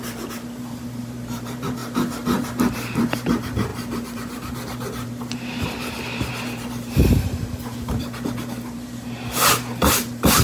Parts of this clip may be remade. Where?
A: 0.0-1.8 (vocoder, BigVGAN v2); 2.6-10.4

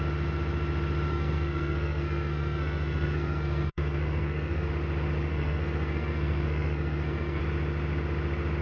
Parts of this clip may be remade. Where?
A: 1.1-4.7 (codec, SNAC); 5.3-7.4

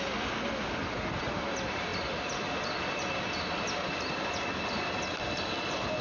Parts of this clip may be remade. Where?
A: none

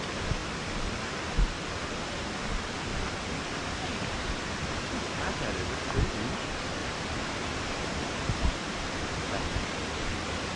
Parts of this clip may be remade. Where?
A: 2.9-4.0 (vocoder, BigVGAN v2); 6.8-8.5

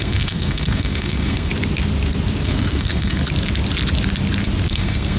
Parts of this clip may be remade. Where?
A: 0.0-1.5 (codec, SNAC); 2.4-3.2; 4.7-5.2